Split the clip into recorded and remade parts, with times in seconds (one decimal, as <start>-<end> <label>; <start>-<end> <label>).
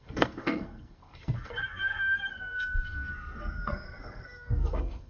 0.0-5.1 remade